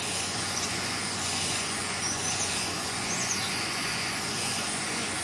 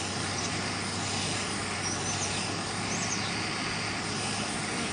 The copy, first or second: first